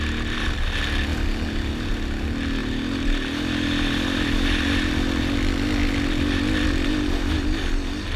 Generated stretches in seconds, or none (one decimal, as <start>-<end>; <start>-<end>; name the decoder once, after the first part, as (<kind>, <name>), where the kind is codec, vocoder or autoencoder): none